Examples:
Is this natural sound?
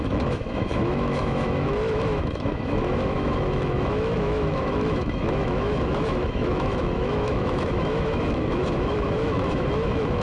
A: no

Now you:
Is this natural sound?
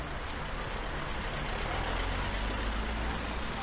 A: yes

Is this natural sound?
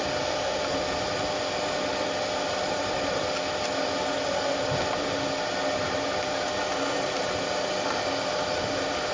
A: yes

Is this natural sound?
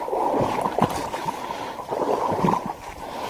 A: yes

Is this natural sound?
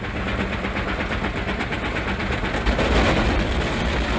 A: yes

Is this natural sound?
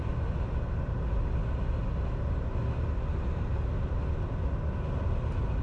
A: yes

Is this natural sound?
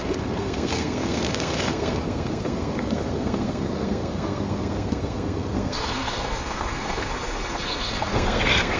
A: no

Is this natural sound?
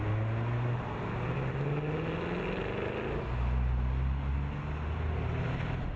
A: yes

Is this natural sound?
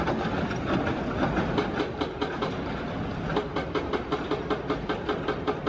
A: yes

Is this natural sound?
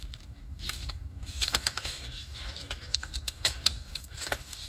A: no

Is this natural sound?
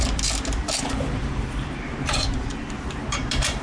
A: no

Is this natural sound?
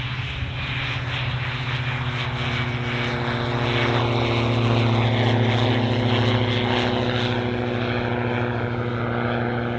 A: yes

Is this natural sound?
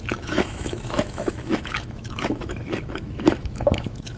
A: no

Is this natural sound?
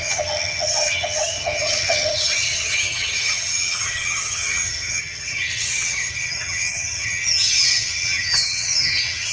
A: no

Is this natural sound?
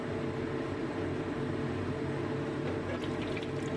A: yes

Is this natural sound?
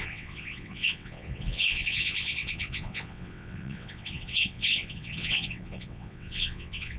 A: no